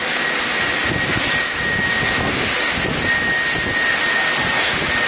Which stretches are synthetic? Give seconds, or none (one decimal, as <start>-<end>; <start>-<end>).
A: none